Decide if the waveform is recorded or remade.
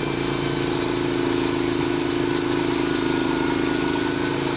recorded